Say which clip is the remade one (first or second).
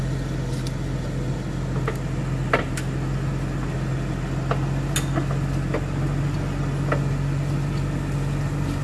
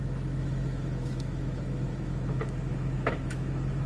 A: second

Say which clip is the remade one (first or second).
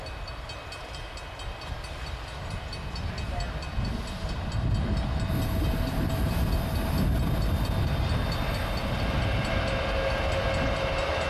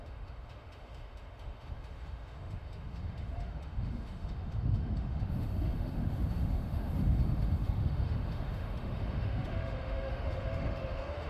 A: second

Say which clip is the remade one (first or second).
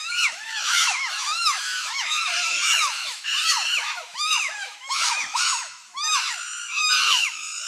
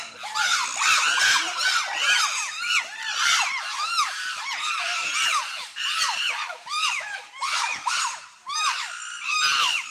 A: first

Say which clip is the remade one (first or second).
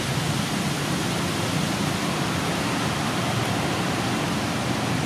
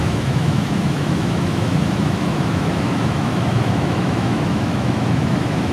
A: second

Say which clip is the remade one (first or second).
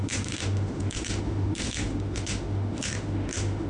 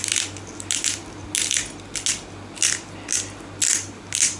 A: first